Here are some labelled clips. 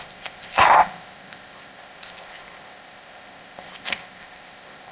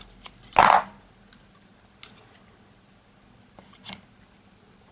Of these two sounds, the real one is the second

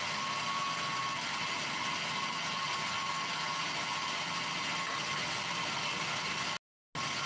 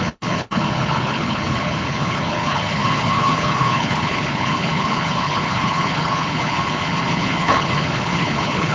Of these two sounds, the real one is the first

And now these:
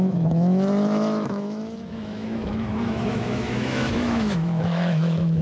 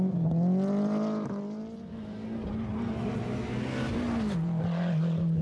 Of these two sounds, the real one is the second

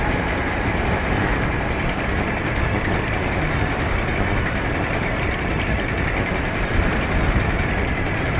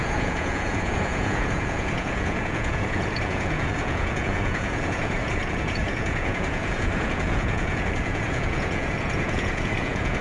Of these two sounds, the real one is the first